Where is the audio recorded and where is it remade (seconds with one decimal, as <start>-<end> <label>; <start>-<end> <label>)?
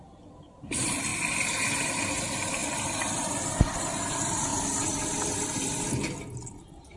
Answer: 0.0-1.1 remade; 1.1-1.8 recorded; 1.8-2.6 remade; 2.6-3.4 recorded; 3.4-7.0 remade